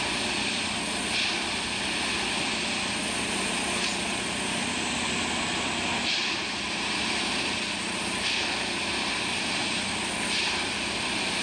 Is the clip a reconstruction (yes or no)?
no